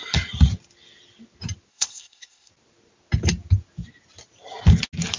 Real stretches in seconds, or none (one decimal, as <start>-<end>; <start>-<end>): 0.0-1.7; 2.5-5.2